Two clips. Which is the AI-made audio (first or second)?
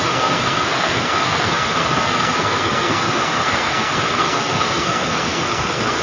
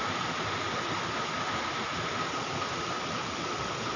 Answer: first